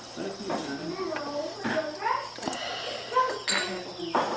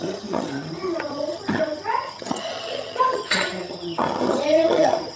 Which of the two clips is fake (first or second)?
second